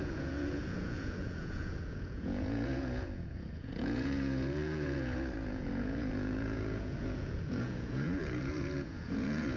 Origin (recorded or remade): remade